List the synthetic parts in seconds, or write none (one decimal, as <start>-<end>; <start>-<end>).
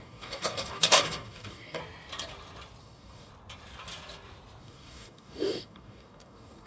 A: 0.0-1.8; 2.8-3.3; 4.6-6.7